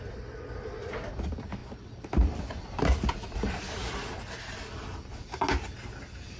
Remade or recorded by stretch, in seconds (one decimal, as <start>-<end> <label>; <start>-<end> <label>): 0.0-6.4 recorded